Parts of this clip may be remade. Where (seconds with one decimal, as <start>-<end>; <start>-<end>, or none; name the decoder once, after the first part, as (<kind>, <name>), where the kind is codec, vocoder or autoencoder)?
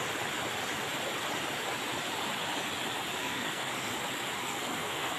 3.2-3.9 (codec, SNAC); 4.4-5.2